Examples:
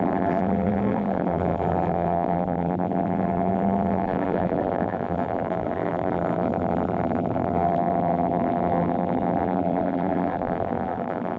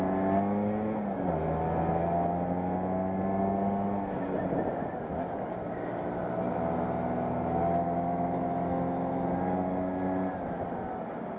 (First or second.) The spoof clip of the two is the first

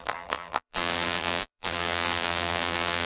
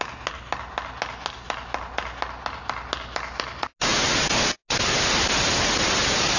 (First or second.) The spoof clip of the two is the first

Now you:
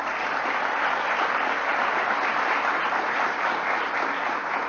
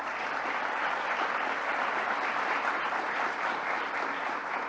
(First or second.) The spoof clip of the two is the second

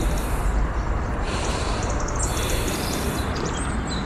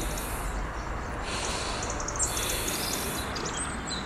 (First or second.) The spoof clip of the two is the first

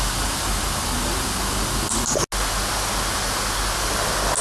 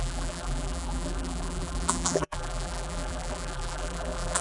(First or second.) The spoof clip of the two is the second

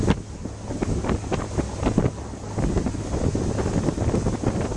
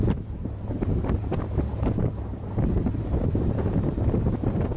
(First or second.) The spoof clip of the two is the second